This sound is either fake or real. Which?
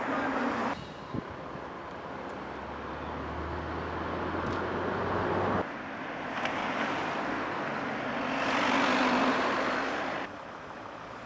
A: real